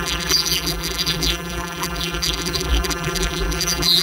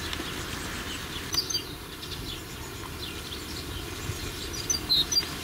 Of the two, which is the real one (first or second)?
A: second